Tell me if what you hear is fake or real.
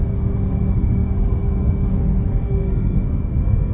fake